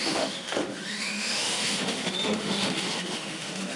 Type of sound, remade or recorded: remade